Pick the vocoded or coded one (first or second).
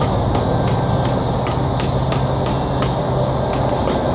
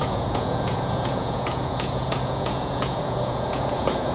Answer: second